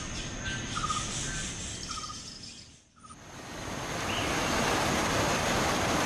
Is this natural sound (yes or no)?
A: yes